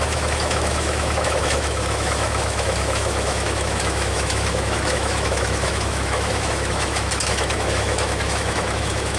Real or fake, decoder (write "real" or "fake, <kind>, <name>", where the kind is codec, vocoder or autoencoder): fake, autoencoder, DAC-VAE